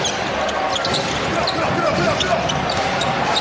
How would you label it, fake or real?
real